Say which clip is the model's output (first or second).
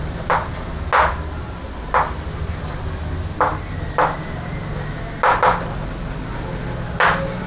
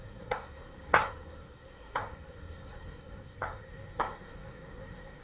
second